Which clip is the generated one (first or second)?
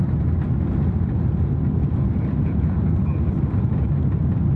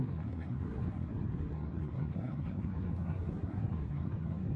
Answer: second